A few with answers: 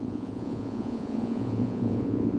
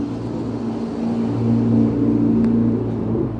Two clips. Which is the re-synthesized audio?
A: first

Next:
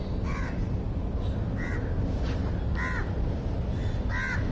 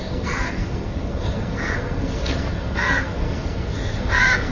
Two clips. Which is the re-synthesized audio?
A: second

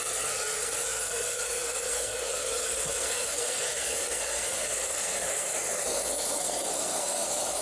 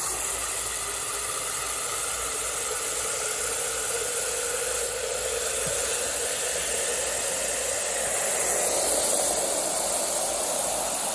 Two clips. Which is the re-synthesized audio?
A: first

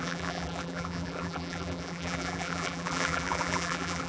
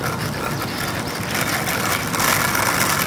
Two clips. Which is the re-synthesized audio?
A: first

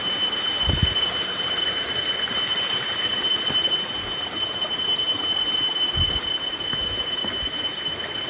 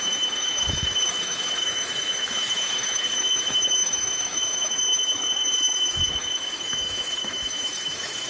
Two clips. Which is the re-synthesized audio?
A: second